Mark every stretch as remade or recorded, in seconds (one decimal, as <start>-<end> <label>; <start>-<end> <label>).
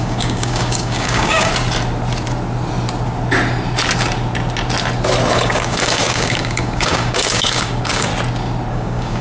0.0-1.5 remade; 1.5-5.3 recorded; 5.3-8.1 remade; 8.1-8.7 recorded; 8.7-9.2 remade